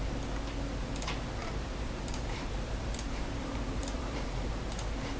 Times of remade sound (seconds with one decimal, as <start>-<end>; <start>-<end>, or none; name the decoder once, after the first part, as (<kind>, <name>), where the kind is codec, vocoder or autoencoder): 1.4-4.5 (vocoder, BigVGAN v2)